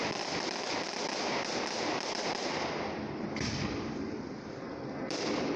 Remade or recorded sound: remade